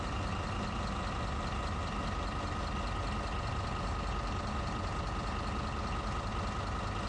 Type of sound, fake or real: real